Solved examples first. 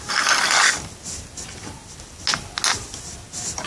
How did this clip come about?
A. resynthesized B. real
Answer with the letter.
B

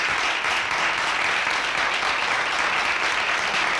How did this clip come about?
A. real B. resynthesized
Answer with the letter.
A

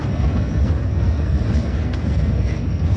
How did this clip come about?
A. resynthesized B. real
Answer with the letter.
A